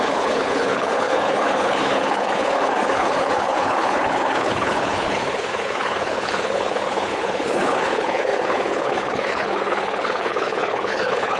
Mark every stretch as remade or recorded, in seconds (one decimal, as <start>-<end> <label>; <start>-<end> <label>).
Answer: 0.0-11.4 remade